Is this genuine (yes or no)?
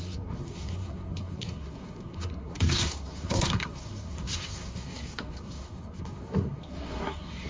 no